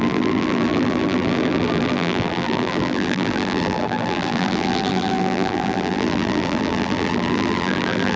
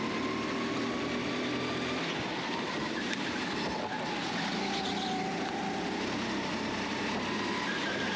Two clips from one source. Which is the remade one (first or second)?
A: first